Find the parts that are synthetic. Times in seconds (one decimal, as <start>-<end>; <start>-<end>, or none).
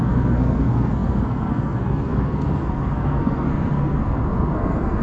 0.0-5.0